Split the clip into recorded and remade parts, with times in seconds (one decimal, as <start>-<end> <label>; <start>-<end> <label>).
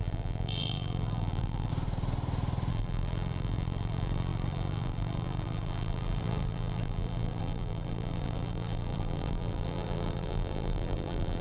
0.0-1.7 remade; 1.7-2.7 recorded; 2.7-11.4 remade